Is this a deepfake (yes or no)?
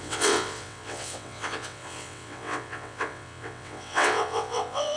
yes